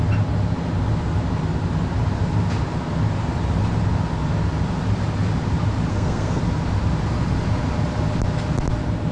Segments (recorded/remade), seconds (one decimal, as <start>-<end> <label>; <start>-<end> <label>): 0.0-5.9 recorded; 5.9-6.4 remade; 6.4-9.1 recorded